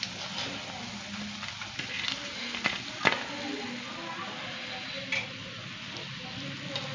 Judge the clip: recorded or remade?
recorded